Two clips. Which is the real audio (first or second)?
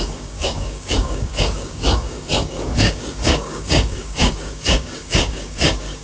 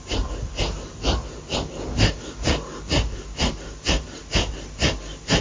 second